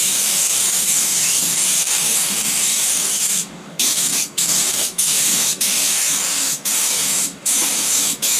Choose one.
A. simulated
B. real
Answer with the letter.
A